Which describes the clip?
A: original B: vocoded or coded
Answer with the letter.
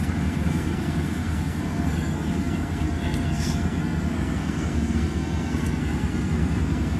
B